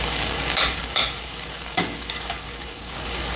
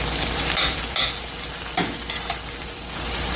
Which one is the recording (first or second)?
second